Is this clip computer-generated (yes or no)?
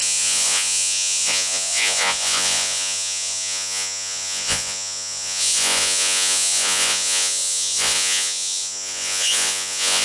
yes